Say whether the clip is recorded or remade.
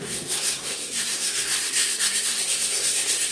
remade